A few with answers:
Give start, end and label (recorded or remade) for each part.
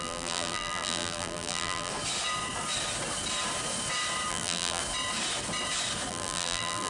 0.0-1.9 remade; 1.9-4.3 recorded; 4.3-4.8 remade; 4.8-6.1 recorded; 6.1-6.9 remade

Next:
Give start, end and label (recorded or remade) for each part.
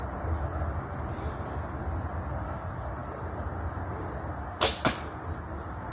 0.0-5.9 recorded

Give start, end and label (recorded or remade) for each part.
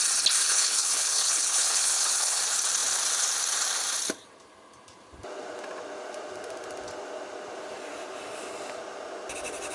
0.0-0.4 recorded; 0.4-2.4 remade; 2.4-9.7 recorded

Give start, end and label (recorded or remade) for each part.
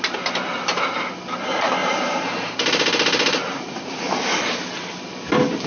0.0-1.8 recorded; 1.8-4.2 remade; 4.2-5.7 recorded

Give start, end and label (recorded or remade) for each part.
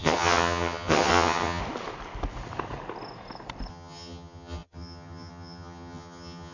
0.0-1.6 remade; 1.6-3.7 recorded; 3.7-6.5 remade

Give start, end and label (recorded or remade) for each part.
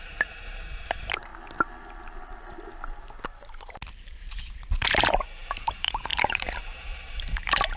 0.0-1.3 remade; 1.3-4.0 recorded; 4.0-7.8 remade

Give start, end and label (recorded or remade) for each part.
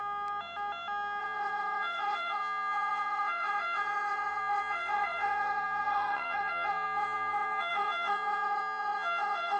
0.0-1.2 recorded; 1.2-9.6 remade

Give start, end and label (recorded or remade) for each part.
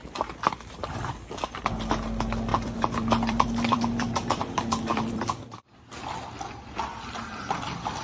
0.0-1.7 remade; 1.7-2.5 recorded; 2.5-4.4 remade; 4.4-4.9 recorded; 4.9-5.8 remade; 5.8-8.0 recorded